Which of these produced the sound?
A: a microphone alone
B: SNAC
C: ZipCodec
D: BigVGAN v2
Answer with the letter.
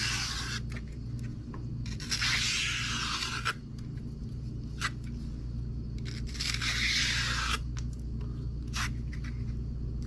A